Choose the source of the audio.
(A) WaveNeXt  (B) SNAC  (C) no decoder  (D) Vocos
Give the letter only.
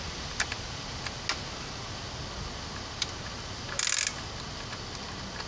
C